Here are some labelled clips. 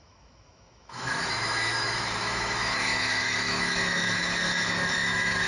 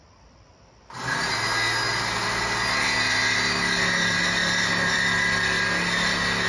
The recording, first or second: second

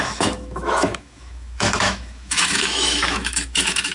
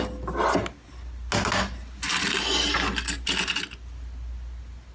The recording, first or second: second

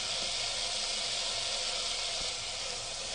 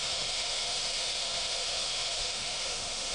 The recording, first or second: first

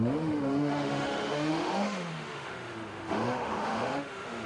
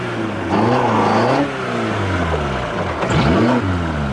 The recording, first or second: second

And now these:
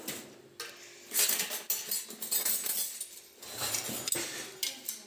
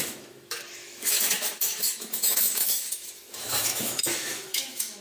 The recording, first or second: first